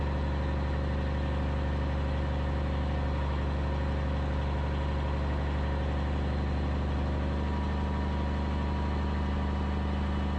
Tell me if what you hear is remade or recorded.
recorded